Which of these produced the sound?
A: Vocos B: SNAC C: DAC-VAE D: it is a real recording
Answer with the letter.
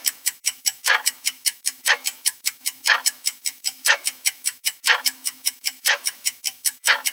C